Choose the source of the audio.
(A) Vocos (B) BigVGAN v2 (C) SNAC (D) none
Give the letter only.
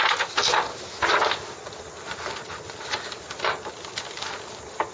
D